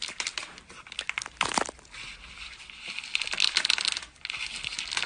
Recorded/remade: recorded